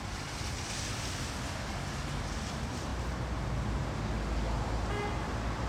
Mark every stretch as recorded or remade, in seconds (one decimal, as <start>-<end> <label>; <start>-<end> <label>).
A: 0.0-5.7 recorded